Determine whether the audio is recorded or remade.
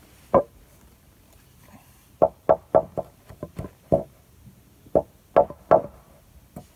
recorded